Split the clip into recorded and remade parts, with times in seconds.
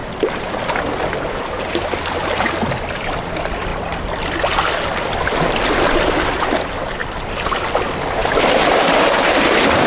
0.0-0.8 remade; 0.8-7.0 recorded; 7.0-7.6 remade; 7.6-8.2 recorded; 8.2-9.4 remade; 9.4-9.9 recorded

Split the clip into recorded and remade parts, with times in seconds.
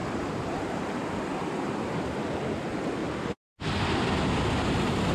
0.0-0.6 remade; 0.6-1.3 recorded; 1.3-2.0 remade; 2.0-3.0 recorded; 3.0-3.8 remade; 3.8-5.1 recorded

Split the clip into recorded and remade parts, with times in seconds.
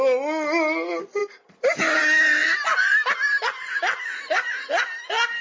0.0-5.4 recorded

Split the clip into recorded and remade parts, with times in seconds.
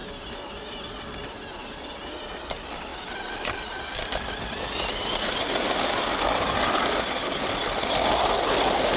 0.0-9.0 recorded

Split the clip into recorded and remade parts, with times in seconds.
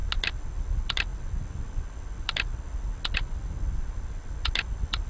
0.0-5.1 recorded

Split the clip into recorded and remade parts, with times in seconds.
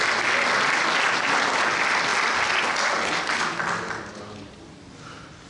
0.0-5.5 recorded